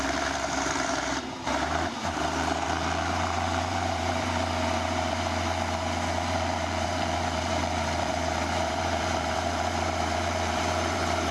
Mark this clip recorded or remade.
remade